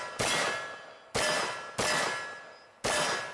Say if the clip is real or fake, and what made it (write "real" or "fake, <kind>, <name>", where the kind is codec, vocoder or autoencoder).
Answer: real